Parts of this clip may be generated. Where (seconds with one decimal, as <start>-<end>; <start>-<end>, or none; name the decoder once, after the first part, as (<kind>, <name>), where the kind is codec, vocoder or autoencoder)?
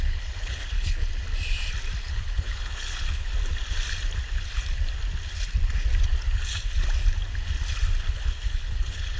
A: 0.0-1.1 (codec, HILCodec); 2.0-3.3; 8.1-9.2